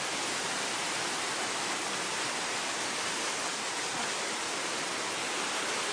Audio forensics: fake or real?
real